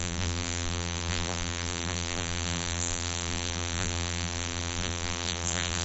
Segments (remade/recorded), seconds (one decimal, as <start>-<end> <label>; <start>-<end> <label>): 0.0-5.8 remade